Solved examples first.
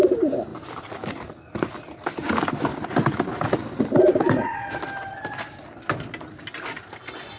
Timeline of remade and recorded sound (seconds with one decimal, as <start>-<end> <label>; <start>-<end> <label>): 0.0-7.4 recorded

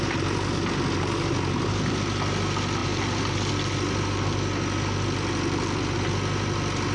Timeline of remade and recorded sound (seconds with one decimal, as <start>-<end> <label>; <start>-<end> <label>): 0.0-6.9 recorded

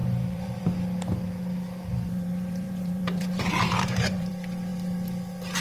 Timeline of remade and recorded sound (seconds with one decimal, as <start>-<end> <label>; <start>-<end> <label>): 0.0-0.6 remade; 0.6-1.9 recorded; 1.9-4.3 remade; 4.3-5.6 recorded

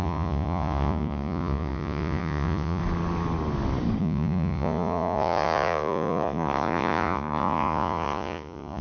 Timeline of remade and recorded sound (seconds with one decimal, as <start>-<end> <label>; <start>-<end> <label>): 0.0-2.8 remade; 2.8-4.0 recorded; 4.0-8.8 remade

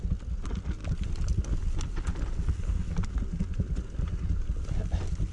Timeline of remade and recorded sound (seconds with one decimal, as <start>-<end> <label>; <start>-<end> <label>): 0.0-5.3 recorded

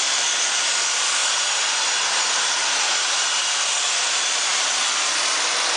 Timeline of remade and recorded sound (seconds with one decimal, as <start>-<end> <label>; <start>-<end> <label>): 0.0-5.8 recorded

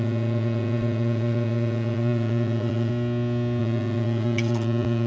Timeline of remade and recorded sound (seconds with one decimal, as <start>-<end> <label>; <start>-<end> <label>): 0.0-2.9 remade; 2.9-3.6 recorded; 3.6-5.1 remade

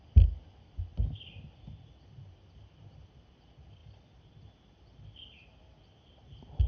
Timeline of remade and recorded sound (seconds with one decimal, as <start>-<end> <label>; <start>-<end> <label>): 0.0-6.7 recorded